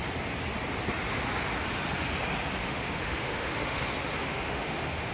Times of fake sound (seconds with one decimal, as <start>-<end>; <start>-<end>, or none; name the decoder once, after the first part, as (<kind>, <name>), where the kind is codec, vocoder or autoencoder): 2.6-3.8 (autoencoder, DAC-VAE); 4.3-5.1

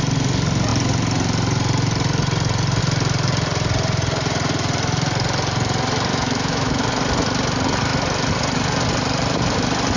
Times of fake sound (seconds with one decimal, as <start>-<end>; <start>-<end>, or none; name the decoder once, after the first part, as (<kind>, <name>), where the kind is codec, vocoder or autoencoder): 6.1-6.8 (autoencoder, DAC-VAE)

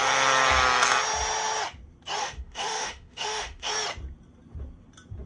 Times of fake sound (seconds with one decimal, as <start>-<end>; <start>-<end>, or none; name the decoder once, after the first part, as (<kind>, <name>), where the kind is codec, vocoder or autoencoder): 2.2-3.7 (autoencoder, DAC-VAE)

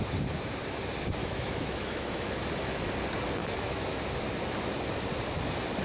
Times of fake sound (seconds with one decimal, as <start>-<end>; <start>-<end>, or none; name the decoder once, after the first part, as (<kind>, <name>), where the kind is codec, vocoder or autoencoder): 1.2-2.3 (autoencoder, DAC-VAE); 3.4-4.0

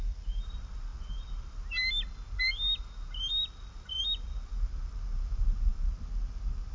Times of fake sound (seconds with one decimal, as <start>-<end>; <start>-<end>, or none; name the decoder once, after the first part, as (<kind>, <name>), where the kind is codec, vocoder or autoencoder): none

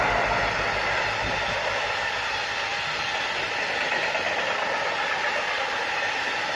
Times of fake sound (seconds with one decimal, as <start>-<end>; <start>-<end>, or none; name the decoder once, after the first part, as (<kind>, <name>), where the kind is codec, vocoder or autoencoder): none